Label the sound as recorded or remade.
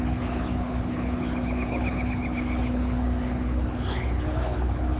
remade